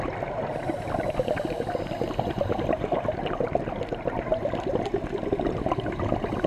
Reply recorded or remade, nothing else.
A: recorded